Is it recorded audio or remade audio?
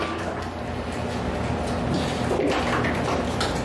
recorded